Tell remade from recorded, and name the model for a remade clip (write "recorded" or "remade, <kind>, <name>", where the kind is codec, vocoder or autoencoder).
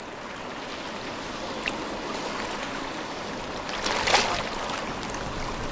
recorded